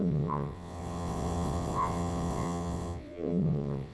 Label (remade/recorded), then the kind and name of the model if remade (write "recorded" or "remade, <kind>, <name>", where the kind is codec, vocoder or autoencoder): remade, vocoder, WaveNeXt